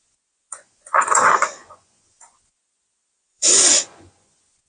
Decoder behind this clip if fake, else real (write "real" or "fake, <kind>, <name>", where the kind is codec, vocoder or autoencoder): fake, vocoder, Vocos